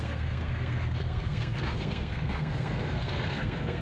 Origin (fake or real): fake